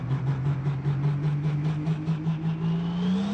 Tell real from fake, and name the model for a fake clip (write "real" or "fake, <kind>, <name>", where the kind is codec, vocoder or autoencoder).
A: real